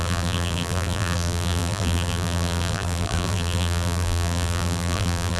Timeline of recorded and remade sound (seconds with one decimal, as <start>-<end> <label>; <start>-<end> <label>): 0.0-5.4 remade